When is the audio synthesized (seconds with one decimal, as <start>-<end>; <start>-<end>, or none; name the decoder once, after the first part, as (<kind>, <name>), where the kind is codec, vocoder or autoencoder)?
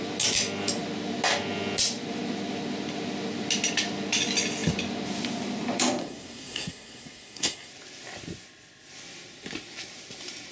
6.0-7.7 (codec, SNAC)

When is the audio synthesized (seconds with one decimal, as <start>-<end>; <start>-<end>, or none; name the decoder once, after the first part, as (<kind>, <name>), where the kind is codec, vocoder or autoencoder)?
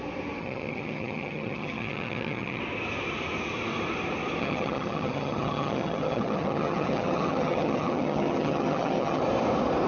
0.4-2.6 (vocoder, HiFi-GAN); 4.4-9.2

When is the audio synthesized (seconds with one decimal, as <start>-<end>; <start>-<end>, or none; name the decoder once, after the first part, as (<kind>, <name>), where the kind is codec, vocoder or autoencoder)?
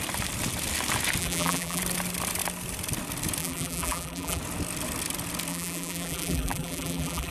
1.2-1.8 (vocoder, BigVGAN v2); 3.4-4.4; 5.5-7.3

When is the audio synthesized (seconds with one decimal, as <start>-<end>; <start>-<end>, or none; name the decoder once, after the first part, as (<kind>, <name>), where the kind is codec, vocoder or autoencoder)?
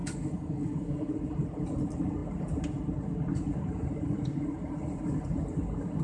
0.0-1.1 (codec, DAC)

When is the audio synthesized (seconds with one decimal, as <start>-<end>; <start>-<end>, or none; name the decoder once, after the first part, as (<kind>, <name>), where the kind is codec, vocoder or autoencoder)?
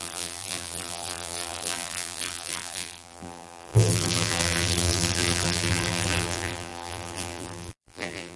0.0-8.4 (vocoder, BigVGAN v2)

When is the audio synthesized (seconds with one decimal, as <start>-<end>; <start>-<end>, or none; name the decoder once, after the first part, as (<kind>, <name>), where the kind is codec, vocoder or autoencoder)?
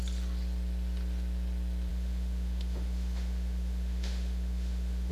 1.9-5.1 (autoencoder, DAC-VAE)